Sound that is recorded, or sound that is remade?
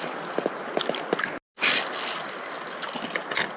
recorded